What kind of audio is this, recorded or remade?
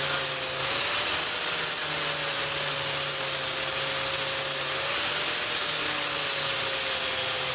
recorded